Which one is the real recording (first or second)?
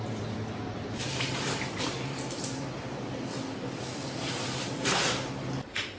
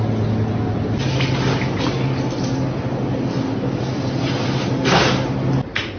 second